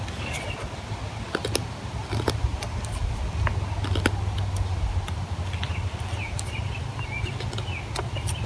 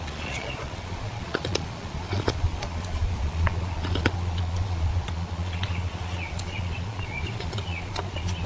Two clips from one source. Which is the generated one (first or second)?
second